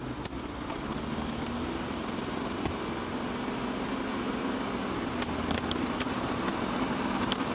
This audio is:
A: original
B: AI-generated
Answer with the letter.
A